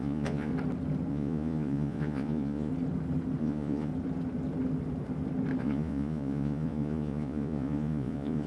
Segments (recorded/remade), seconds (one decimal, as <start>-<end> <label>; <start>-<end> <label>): 0.0-0.5 remade; 0.5-1.1 recorded; 1.1-2.7 remade; 2.7-3.4 recorded; 3.4-3.9 remade; 3.9-5.6 recorded; 5.6-8.5 remade

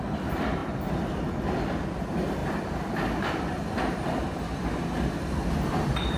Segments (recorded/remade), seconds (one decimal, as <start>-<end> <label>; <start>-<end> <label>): 0.0-6.2 recorded

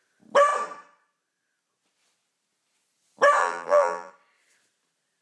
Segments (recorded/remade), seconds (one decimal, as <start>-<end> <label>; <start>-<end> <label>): 0.0-3.4 recorded; 3.4-4.1 remade; 4.1-5.2 recorded

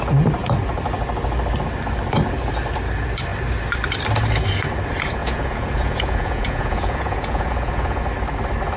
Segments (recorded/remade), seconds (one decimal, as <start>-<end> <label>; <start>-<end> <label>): 0.0-5.2 recorded; 5.2-8.0 remade; 8.0-8.8 recorded

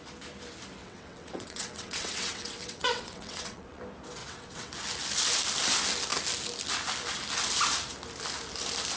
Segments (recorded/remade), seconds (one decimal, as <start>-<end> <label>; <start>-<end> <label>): 0.0-0.8 recorded; 0.8-3.8 remade; 3.8-4.2 recorded; 4.2-4.7 remade; 4.7-9.0 recorded

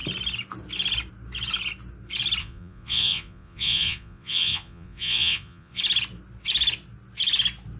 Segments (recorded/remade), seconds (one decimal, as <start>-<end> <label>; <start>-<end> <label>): 0.0-2.4 recorded; 2.4-5.8 remade; 5.8-7.8 recorded

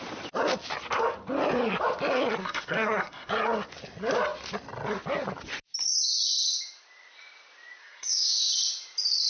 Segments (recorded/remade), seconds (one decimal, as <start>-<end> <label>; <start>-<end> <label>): 0.0-2.4 recorded; 2.4-3.3 remade; 3.3-7.8 recorded; 7.8-8.5 remade; 8.5-9.3 recorded

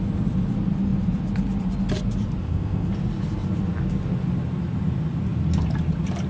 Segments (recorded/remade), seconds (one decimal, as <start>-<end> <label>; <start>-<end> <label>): 0.0-2.4 recorded; 2.4-2.9 remade; 2.9-6.3 recorded